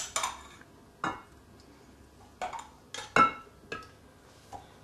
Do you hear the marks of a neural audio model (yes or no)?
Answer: no